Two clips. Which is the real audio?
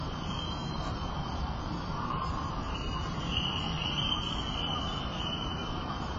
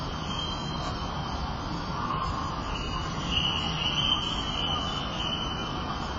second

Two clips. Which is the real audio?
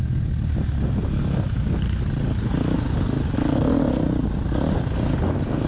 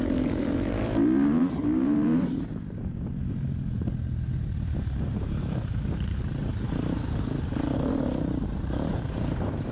first